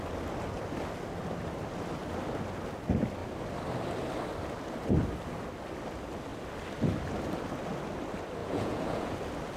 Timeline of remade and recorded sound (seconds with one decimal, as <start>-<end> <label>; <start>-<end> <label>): 0.0-8.4 recorded; 8.4-9.1 remade; 9.1-9.6 recorded